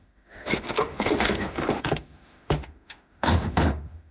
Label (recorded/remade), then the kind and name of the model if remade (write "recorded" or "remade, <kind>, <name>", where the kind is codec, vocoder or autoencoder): remade, autoencoder, DAC-VAE